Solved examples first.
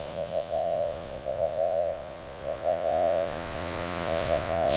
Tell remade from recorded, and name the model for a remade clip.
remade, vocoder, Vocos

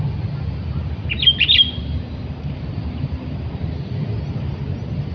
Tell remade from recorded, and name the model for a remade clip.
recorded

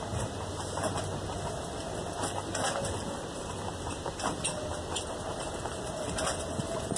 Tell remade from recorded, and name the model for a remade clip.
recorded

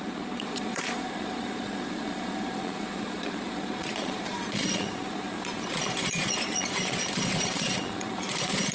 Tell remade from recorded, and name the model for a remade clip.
remade, vocoder, Vocos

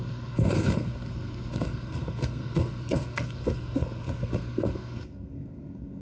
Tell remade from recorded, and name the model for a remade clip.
remade, codec, SNAC